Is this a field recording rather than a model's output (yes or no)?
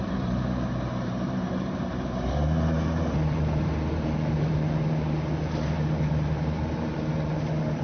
no